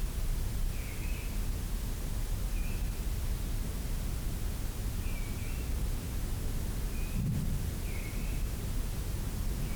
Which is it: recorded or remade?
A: recorded